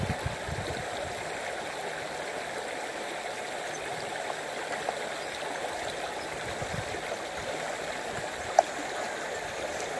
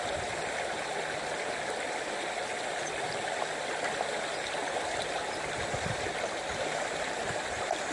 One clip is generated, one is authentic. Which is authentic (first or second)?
first